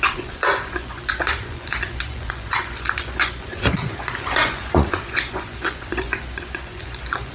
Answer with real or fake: fake